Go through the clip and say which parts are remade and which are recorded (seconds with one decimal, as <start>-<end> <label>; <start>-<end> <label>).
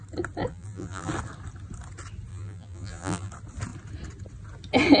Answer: 0.0-0.5 recorded; 0.5-1.1 remade; 1.1-2.3 recorded; 2.3-3.3 remade; 3.3-5.0 recorded